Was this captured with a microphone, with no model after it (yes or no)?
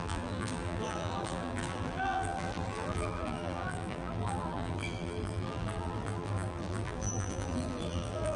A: no